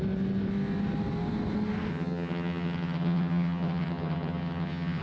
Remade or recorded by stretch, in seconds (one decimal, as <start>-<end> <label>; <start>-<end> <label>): 0.0-1.9 recorded; 1.9-5.0 remade